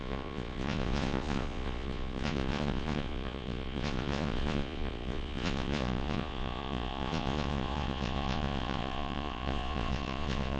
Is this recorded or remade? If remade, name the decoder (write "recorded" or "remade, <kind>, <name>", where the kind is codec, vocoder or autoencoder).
remade, vocoder, Vocos